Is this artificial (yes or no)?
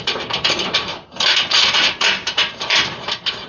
yes